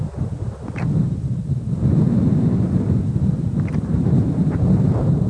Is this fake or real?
real